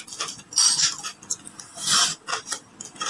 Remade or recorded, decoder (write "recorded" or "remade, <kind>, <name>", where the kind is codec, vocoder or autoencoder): recorded